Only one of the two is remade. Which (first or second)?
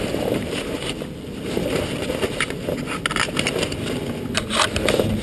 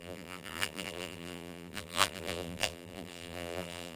second